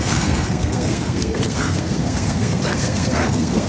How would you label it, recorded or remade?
remade